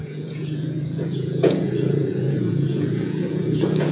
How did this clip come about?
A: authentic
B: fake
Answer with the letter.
B